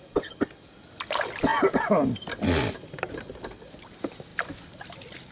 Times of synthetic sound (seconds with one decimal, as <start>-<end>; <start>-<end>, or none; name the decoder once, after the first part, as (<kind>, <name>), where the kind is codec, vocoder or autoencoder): 1.5-2.3 (vocoder, BigVGAN v2); 4.3-5.3

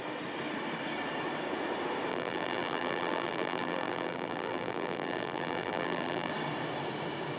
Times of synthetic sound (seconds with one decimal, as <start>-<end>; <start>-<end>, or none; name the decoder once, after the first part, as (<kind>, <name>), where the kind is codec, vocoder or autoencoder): 2.1-6.3 (vocoder, BigVGAN v2)

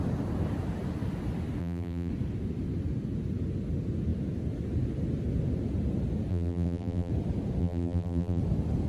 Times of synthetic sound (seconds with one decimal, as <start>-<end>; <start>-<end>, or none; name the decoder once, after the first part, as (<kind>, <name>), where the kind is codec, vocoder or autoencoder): 1.6-2.1 (vocoder, BigVGAN v2); 6.3-7.1; 7.6-8.4

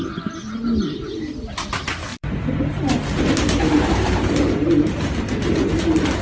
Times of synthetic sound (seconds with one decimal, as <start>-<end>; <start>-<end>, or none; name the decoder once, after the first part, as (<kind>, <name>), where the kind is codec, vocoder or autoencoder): 2.1-5.7 (vocoder, BigVGAN v2)

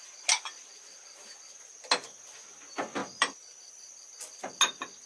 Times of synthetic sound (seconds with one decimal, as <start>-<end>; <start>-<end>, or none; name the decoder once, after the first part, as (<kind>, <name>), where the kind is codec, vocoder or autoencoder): 3.0-4.0 (vocoder, BigVGAN v2)